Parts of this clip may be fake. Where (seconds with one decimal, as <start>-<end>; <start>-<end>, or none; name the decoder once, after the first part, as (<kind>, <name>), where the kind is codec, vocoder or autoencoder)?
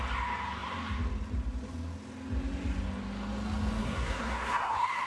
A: 3.8-5.1 (codec, SNAC)